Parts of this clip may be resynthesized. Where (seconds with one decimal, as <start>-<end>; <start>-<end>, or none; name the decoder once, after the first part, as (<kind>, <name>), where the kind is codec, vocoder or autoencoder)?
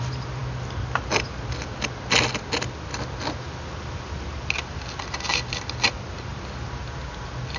none